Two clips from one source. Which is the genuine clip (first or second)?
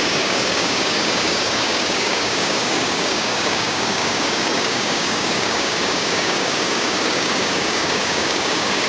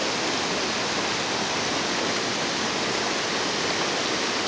second